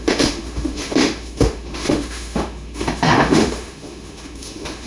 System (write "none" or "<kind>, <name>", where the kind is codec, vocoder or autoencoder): autoencoder, DAC-VAE